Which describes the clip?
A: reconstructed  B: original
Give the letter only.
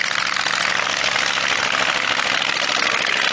B